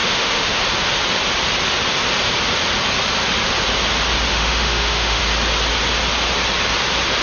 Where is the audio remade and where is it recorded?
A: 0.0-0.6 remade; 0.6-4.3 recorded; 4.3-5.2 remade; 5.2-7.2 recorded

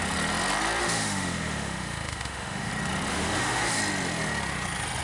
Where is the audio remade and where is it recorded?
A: 0.0-0.8 recorded; 0.8-2.7 remade; 2.7-3.1 recorded; 3.1-3.8 remade; 3.8-5.0 recorded

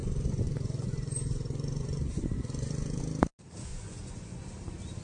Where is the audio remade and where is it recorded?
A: 0.0-3.0 remade; 3.0-3.7 recorded; 3.7-4.4 remade; 4.4-5.0 recorded

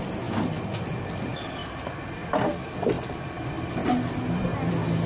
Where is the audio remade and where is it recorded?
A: 0.0-5.1 recorded

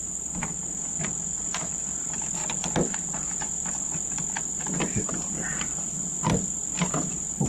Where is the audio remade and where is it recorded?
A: 0.0-7.5 recorded

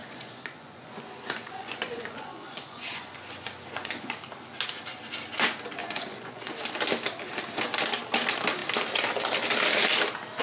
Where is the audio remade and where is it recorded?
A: 0.0-4.2 remade; 4.2-5.8 recorded; 5.8-6.5 remade; 6.5-10.4 recorded